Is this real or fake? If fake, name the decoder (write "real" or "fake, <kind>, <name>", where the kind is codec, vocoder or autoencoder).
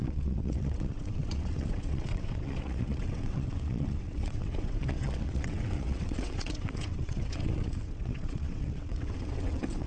fake, vocoder, WaveNeXt